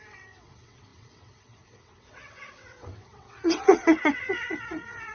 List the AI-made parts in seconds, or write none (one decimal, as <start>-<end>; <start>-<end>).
0.0-5.1